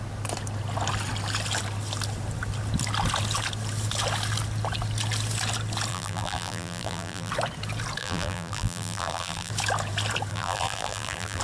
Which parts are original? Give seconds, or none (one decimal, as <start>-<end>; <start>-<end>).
0.0-5.9; 7.3-8.0; 9.5-10.3